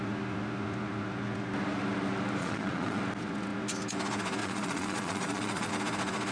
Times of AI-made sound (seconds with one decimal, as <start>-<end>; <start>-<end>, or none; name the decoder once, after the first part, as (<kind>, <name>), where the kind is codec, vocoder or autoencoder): 2.4-3.0 (vocoder, Vocos); 4.4-5.7